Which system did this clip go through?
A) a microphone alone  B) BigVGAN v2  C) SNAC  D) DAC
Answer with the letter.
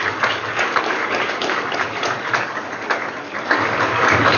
D